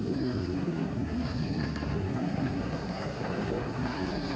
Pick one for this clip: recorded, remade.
remade